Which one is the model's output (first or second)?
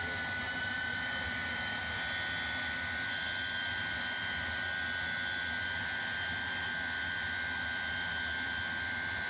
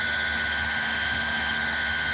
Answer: second